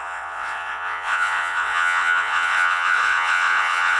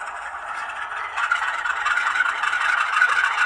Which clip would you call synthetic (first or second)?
first